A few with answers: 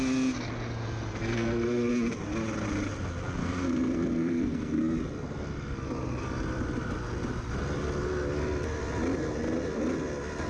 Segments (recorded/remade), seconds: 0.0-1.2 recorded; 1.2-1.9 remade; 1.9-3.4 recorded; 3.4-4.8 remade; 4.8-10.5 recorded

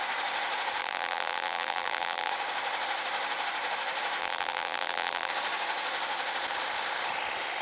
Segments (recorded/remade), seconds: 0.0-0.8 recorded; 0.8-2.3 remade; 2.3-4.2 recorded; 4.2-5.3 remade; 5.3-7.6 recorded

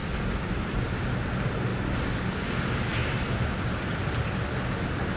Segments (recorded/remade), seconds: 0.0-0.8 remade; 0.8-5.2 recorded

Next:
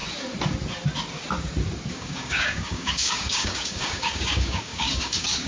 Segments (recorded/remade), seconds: 0.0-1.9 recorded; 1.9-5.5 remade

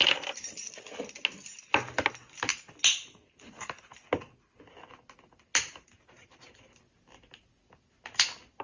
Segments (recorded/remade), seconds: 0.0-8.6 recorded

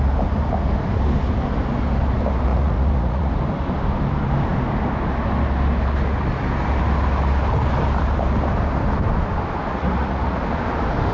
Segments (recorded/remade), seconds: 0.0-2.5 recorded; 2.5-3.3 remade; 3.3-9.7 recorded; 9.7-10.4 remade; 10.4-11.1 recorded

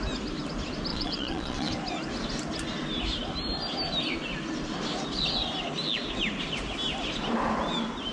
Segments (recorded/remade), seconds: 0.0-0.9 recorded; 0.9-1.7 remade; 1.7-8.1 recorded